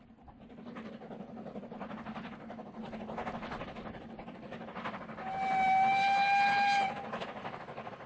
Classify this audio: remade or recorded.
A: recorded